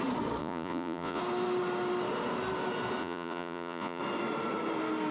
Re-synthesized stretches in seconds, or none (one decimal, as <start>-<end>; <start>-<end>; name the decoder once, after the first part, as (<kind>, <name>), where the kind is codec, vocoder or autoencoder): 0.4-1.2 (vocoder, Vocos); 3.0-4.0